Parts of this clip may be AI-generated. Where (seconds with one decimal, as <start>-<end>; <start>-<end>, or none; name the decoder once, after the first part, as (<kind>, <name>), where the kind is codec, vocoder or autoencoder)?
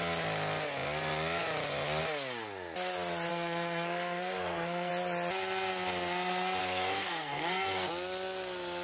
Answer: 3.3-4.9 (codec, SNAC); 6.6-7.9